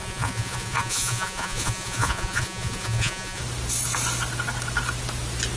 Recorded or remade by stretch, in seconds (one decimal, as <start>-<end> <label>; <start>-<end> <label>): 0.0-3.4 remade; 3.4-5.6 recorded

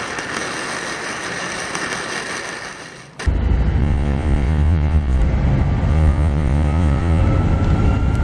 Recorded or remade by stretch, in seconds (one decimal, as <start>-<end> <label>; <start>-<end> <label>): 0.0-3.8 recorded; 3.8-5.2 remade; 5.2-5.9 recorded; 5.9-7.2 remade; 7.2-8.2 recorded

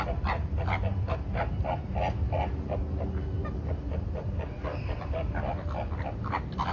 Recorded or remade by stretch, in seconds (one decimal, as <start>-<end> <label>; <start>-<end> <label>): 0.0-6.7 recorded